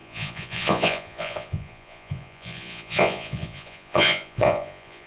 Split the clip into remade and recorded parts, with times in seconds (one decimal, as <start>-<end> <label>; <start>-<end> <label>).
0.0-5.1 remade